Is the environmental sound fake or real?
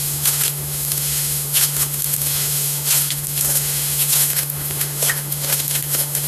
fake